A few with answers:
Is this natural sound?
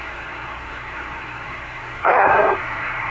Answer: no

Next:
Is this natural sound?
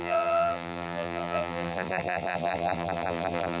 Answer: no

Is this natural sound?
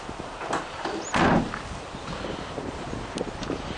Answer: yes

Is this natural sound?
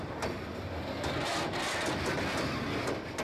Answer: yes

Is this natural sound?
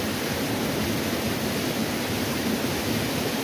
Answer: yes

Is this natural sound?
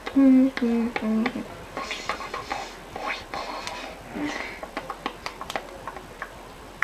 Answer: yes